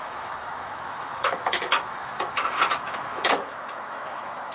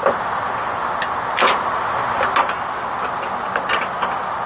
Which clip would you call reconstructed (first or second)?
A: first